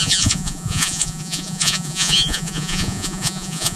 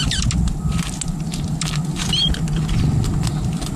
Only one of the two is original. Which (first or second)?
second